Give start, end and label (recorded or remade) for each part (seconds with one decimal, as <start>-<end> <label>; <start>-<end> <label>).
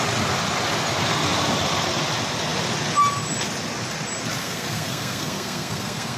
0.0-4.4 recorded; 4.4-6.2 remade